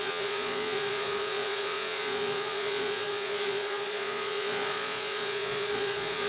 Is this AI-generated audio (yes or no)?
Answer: yes